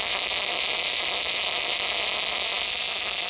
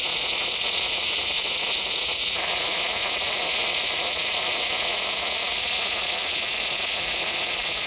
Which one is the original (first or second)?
first